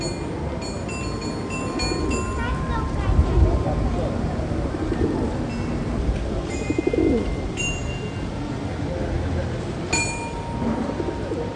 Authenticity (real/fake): real